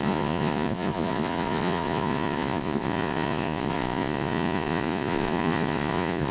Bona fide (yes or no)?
no